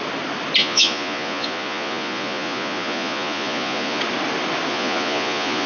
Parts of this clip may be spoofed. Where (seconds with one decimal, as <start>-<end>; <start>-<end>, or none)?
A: 0.6-4.0; 4.7-5.7